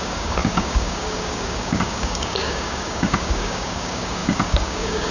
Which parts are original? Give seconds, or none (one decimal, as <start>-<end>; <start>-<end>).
none